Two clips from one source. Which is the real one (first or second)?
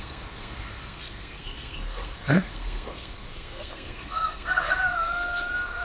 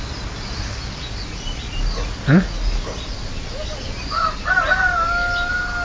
second